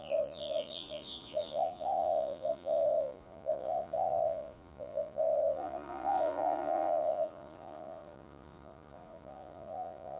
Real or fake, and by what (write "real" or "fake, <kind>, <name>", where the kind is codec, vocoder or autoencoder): fake, vocoder, Vocos